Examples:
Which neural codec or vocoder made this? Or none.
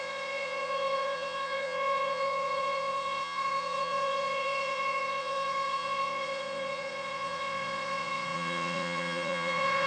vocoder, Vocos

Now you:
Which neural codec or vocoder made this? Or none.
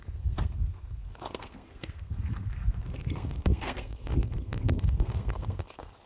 codec, SNAC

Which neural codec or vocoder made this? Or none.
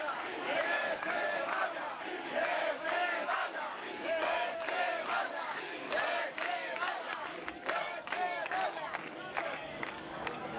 codec, DAC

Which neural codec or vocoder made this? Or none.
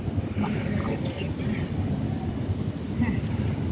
none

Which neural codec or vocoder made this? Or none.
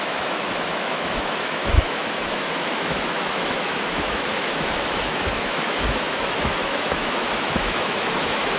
autoencoder, DAC-VAE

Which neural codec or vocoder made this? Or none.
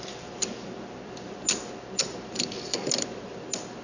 none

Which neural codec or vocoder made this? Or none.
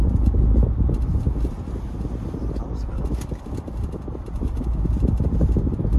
none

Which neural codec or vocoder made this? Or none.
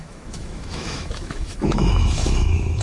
autoencoder, DAC-VAE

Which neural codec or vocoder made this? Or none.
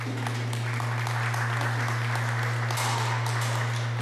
none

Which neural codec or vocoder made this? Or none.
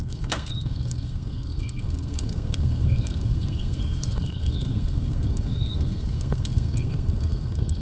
codec, SNAC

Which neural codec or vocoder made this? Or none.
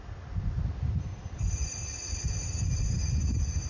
none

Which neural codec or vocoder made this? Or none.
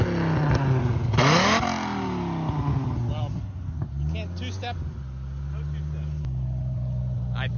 none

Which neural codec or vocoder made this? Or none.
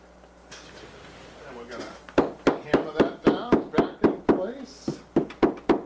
none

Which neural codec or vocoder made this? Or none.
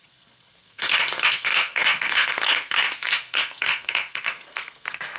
codec, SNAC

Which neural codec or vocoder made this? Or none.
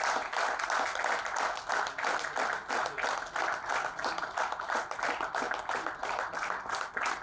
none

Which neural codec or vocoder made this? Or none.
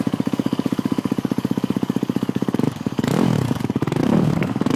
codec, DAC